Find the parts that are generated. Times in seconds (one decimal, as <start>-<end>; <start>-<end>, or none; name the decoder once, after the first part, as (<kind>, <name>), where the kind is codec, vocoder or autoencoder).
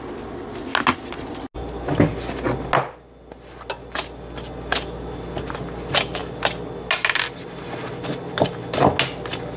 none